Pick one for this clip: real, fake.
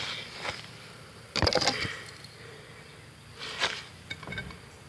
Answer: real